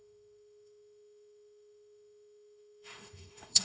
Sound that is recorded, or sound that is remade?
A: remade